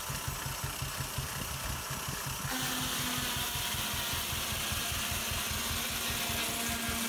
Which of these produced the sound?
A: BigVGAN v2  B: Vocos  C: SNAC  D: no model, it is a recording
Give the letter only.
D